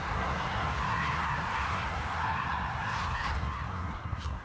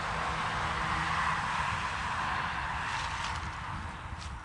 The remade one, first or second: first